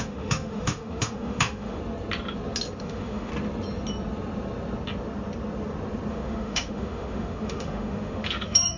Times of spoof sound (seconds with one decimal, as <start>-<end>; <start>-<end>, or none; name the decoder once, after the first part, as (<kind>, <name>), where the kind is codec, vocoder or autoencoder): 0.0-1.8 (autoencoder, DAC-VAE); 2.8-3.3; 6.1-8.8